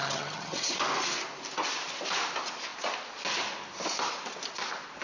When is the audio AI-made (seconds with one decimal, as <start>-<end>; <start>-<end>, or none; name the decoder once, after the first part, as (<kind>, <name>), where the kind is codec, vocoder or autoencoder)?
0.0-0.8 (vocoder, HiFi-GAN)